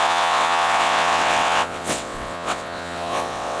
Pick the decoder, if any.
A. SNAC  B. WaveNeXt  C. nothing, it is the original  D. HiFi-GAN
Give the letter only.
B